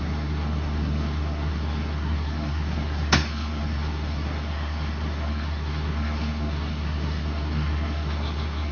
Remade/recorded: remade